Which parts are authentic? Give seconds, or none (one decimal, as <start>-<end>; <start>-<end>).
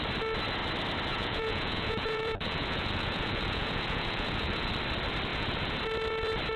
0.0-1.1; 4.7-5.3; 5.8-6.6